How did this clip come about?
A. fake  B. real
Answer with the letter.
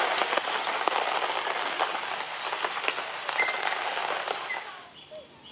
B